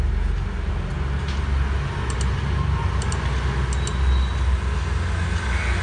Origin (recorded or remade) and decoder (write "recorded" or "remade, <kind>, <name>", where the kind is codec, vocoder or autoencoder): recorded